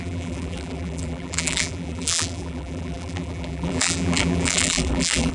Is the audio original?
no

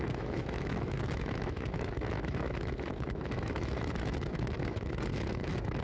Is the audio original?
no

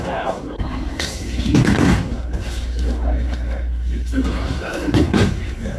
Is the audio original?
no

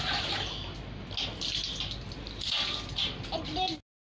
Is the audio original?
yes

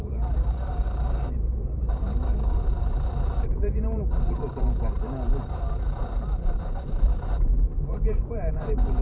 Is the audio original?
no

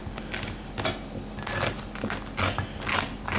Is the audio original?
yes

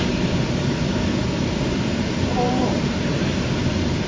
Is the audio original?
no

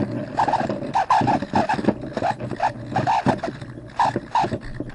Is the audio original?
yes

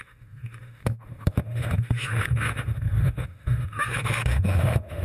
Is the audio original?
no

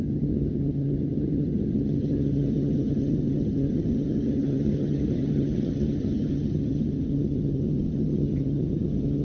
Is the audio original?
no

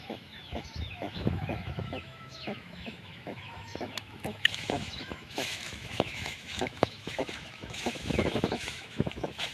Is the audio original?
no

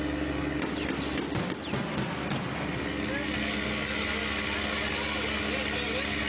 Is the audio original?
yes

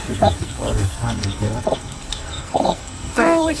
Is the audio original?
no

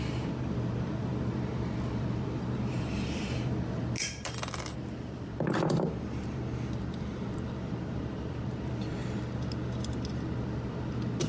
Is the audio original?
no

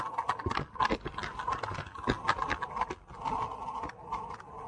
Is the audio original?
yes